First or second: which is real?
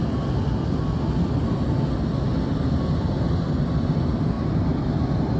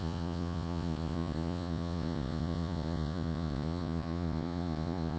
first